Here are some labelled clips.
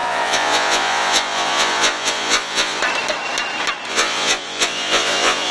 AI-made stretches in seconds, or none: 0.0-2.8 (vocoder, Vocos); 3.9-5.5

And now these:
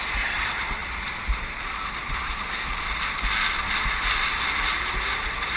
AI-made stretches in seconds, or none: 0.8-2.5 (vocoder, BigVGAN v2)